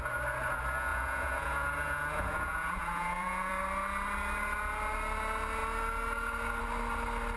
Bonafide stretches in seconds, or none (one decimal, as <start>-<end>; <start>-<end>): 0.0-0.9; 3.5-7.4